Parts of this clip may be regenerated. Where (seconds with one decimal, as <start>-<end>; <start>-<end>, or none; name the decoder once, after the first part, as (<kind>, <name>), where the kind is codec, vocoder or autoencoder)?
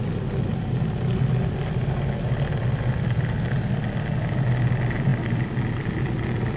none